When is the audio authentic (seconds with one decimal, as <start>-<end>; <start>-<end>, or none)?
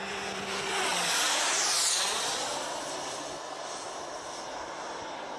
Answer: 0.0-5.4